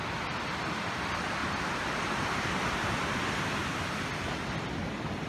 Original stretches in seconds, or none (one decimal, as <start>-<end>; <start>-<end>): 0.0-1.4; 3.6-5.3